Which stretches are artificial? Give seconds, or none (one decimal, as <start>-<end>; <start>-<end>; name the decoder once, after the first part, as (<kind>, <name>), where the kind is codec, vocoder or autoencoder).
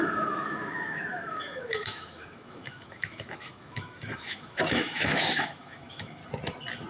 0.0-6.2 (autoencoder, DAC-VAE)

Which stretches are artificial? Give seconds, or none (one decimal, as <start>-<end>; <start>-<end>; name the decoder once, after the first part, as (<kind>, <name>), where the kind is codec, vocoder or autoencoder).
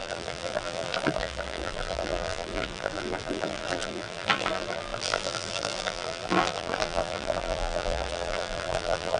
0.0-9.2 (vocoder, BigVGAN v2)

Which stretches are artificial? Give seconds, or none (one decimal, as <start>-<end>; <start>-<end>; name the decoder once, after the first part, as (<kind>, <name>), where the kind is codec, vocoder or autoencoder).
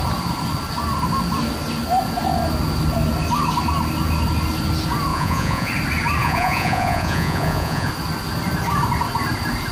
5.1-5.7 (vocoder, Vocos); 6.2-7.9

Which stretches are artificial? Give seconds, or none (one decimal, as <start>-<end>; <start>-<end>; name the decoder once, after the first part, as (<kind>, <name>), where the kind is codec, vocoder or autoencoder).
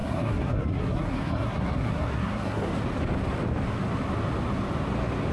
0.0-2.7 (codec, SNAC)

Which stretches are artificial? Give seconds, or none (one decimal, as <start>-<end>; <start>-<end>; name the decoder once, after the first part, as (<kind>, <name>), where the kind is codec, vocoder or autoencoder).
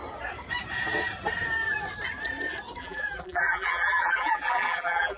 2.8-5.2 (vocoder, BigVGAN v2)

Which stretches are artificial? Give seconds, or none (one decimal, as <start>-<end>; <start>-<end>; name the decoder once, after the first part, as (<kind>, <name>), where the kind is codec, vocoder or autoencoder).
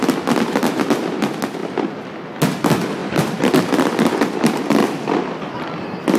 3.0-4.0 (vocoder, BigVGAN v2); 4.8-6.2